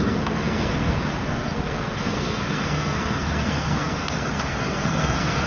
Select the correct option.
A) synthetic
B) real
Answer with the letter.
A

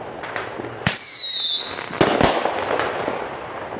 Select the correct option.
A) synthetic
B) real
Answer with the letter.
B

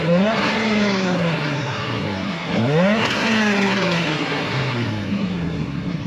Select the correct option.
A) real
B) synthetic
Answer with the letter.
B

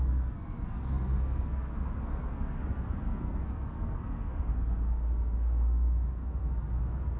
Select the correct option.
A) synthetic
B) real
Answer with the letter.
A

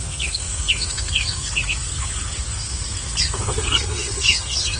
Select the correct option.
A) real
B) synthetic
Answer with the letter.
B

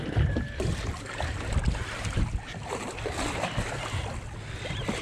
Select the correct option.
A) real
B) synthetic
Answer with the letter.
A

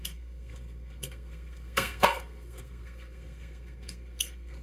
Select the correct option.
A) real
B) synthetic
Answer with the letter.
B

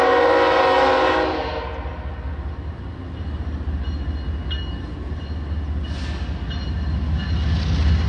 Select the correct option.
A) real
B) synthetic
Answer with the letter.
A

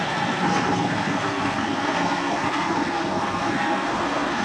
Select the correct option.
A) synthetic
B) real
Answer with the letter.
A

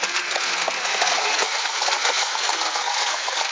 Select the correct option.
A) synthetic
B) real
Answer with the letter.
A